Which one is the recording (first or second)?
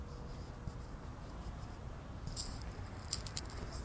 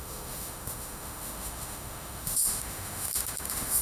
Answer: first